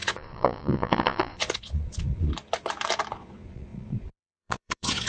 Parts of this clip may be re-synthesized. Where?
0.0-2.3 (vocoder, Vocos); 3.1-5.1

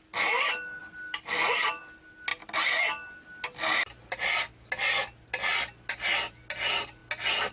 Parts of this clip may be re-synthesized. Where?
0.8-1.8 (vocoder, BigVGAN v2)

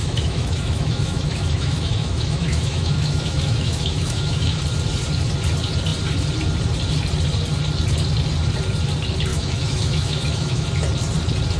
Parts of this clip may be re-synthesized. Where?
0.0-4.6 (autoencoder, DAC-VAE); 9.3-10.7

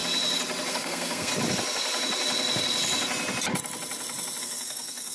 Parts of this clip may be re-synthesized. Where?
0.7-1.3 (codec, SNAC); 4.4-5.1

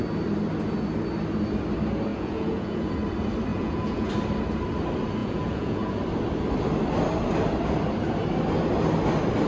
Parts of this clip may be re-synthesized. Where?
2.1-2.9 (vocoder, Vocos); 3.5-4.1; 5.2-6.0